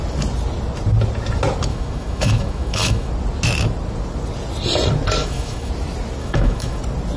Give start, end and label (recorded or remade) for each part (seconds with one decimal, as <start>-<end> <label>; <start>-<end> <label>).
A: 0.0-1.7 recorded; 1.7-3.1 remade; 3.1-5.2 recorded; 5.2-5.7 remade; 5.7-6.2 recorded; 6.2-6.8 remade; 6.8-7.2 recorded